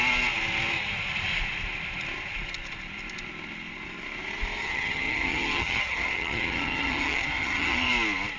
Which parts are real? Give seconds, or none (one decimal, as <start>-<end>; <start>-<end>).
0.0-4.6; 7.9-8.4